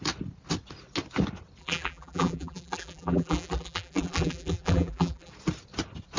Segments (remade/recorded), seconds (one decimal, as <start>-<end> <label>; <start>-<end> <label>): 0.0-1.6 recorded; 1.6-5.3 remade; 5.3-6.2 recorded